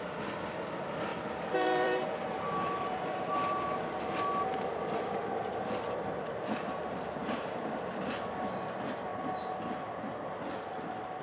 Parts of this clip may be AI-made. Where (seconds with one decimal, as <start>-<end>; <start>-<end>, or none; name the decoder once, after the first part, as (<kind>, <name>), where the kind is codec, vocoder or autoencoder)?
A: 1.1-3.8 (vocoder, BigVGAN v2); 7.2-7.9